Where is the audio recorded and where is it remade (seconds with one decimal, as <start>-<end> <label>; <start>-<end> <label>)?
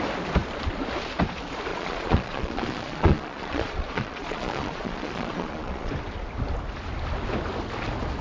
0.0-1.7 recorded; 1.7-5.9 remade; 5.9-8.2 recorded